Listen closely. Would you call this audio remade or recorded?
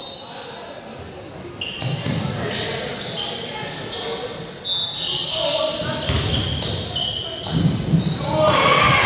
recorded